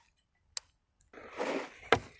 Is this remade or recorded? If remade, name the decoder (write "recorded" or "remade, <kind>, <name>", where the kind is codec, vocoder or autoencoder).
recorded